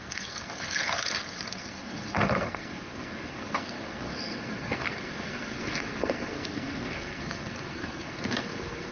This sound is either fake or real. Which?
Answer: fake